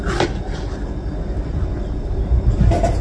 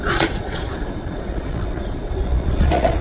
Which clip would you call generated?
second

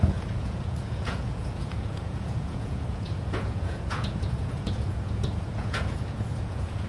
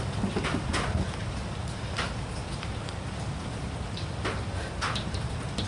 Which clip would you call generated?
first